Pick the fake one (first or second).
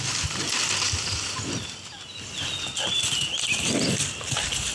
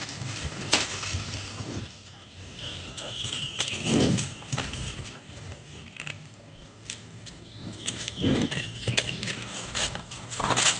second